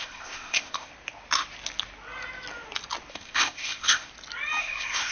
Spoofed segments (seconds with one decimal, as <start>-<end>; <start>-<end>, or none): 0.0-0.9; 3.1-4.1; 4.6-5.1